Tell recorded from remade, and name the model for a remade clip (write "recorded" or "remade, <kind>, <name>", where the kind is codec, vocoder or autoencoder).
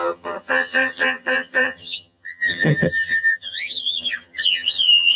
remade, vocoder, HiFi-GAN